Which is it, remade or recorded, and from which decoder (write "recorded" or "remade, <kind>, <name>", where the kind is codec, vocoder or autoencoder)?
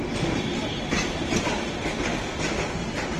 recorded